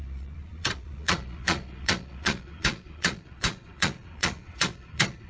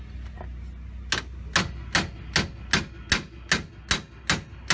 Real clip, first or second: second